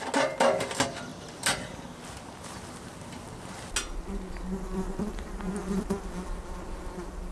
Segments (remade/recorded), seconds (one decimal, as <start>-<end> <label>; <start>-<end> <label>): 0.0-7.3 recorded